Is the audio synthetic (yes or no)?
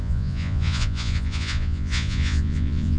yes